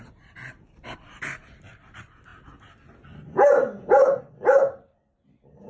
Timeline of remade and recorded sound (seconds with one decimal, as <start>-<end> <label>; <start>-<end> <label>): 0.0-5.7 recorded